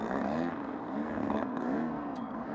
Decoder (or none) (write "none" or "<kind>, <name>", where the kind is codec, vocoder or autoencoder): codec, SNAC